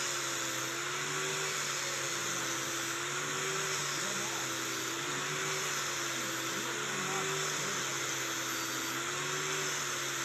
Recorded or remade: recorded